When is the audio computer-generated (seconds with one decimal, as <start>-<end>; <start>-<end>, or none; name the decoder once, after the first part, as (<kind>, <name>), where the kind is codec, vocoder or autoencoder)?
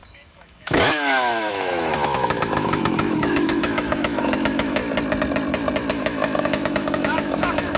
0.0-4.8 (autoencoder, DAC-VAE); 5.9-7.8